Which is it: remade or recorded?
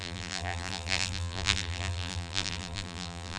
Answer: remade